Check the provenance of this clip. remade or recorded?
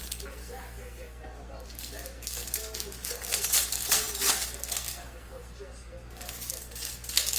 remade